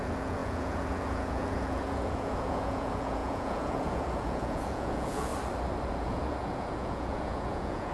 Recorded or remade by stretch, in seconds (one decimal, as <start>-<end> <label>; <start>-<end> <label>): 0.0-5.3 remade; 5.3-5.9 recorded; 5.9-7.9 remade